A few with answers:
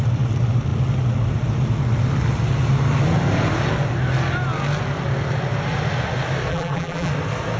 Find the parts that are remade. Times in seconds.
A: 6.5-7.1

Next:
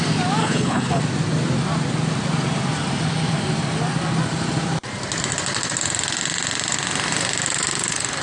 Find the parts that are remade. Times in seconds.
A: 0.4-1.0

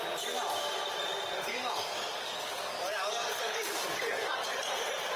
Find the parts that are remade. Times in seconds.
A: 1.5-4.6

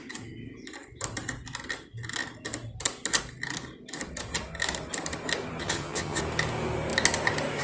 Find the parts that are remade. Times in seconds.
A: 5.6-6.2

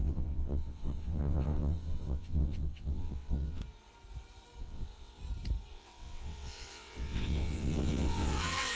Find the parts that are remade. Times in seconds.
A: 0.0-3.6; 4.6-5.2; 5.7-8.8

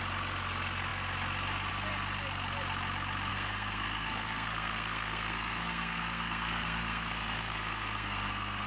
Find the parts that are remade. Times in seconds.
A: 3.3-8.7

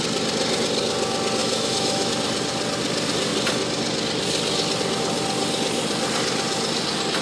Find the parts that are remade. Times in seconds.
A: 1.4-2.1

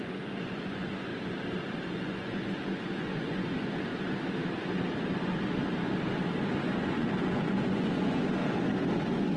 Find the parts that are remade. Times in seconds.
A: 0.0-1.1; 1.9-3.9; 6.8-8.4; 9.0-9.4